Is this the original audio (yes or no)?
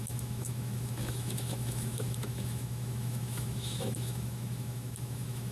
no